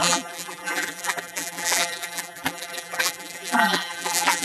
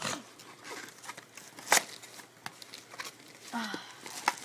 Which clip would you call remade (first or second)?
first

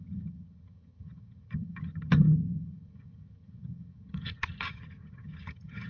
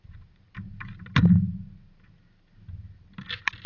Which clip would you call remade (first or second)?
first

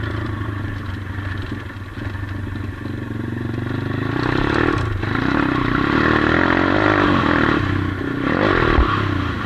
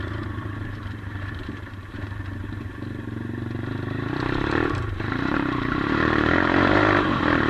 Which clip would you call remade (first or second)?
second